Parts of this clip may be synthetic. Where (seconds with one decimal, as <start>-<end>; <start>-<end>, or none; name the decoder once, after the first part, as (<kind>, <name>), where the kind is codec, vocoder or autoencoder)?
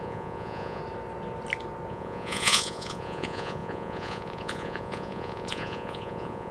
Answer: 0.0-0.8 (vocoder, Vocos); 1.9-6.5